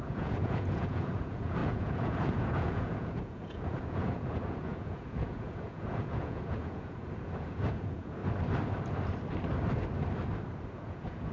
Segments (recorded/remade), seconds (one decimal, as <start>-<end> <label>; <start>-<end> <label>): 0.0-8.2 remade; 8.2-10.8 recorded; 10.8-11.3 remade